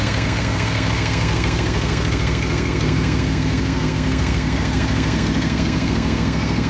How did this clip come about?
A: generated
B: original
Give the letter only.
A